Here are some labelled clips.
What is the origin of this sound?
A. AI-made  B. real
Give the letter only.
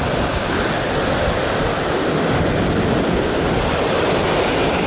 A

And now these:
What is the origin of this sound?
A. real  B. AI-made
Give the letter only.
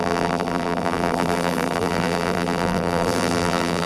B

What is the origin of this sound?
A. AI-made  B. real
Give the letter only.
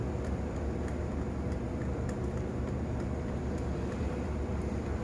B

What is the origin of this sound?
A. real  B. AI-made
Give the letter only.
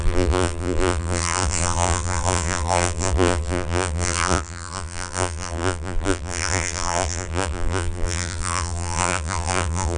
B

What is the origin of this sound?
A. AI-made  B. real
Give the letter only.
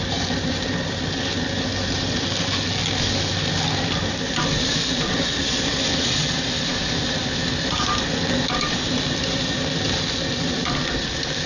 B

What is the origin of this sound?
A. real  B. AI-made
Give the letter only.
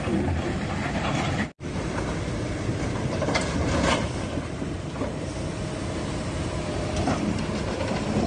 B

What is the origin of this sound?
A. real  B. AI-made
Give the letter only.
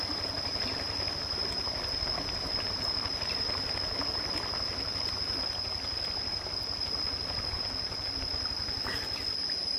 A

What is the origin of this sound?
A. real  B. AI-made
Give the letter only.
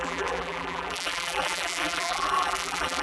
B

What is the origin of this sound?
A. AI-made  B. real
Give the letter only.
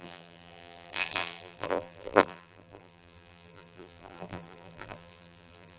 A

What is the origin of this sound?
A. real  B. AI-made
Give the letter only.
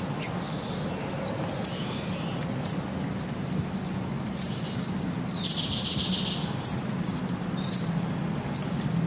A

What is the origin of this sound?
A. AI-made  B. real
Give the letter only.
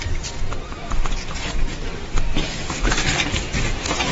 B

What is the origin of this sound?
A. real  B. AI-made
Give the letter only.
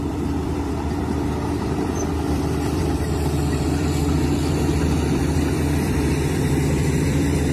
B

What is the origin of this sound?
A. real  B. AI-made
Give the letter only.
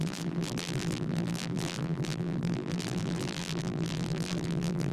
B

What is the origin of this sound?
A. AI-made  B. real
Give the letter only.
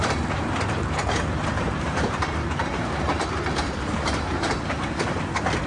A